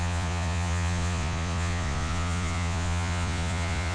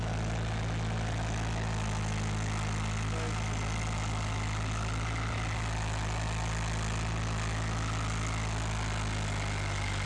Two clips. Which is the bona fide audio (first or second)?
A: second